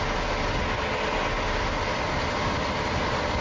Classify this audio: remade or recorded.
recorded